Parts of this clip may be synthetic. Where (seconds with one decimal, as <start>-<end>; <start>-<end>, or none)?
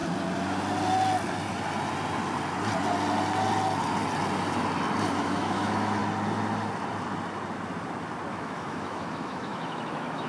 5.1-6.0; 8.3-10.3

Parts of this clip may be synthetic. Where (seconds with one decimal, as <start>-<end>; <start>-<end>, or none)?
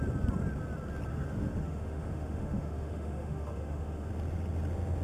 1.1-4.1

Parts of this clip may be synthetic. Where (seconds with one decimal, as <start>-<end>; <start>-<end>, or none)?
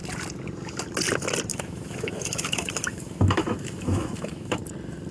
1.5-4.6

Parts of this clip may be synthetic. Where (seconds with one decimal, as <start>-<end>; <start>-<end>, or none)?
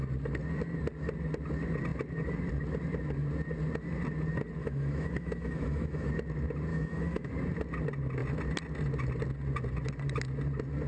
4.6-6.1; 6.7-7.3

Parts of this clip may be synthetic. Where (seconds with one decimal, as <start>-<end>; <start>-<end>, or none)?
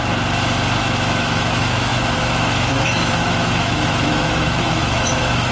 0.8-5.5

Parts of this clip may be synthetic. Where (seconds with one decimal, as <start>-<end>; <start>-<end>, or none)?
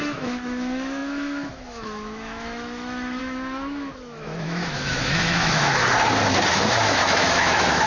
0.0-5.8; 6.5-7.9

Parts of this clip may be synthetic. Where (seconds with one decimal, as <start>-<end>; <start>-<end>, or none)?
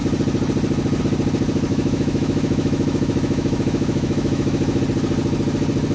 1.7-4.8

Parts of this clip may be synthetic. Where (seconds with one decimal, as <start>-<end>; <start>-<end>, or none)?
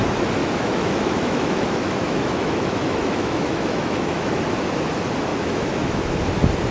0.4-4.4; 5.3-6.2